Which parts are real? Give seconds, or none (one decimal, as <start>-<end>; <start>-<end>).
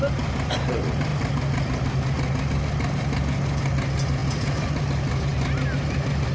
0.0-6.3